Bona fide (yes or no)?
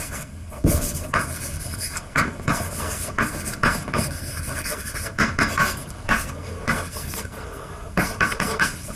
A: no